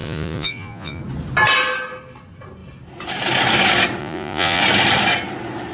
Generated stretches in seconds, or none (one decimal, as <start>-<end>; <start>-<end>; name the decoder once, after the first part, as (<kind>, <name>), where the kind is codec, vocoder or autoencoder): 0.0-1.0 (vocoder, Vocos); 4.0-4.6

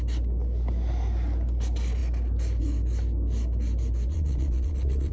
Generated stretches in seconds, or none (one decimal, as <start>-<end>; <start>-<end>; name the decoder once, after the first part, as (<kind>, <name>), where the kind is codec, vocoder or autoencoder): 4.1-5.1 (vocoder, Vocos)

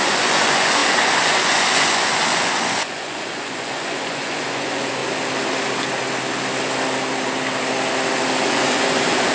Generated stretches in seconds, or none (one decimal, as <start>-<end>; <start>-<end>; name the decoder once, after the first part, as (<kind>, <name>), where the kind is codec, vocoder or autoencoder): 0.0-5.0 (vocoder, Vocos); 8.5-9.3